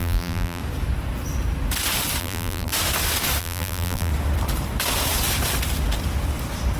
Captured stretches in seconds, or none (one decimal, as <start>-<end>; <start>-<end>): 0.6-2.2; 2.7-3.4; 4.1-6.8